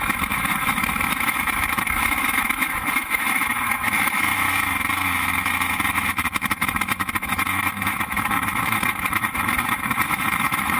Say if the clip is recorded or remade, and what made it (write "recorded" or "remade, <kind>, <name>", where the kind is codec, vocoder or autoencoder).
remade, autoencoder, DAC-VAE